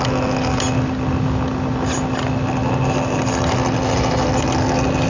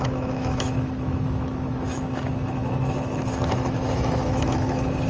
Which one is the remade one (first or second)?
second